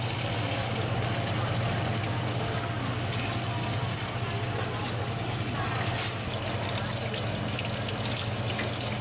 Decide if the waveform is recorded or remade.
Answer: recorded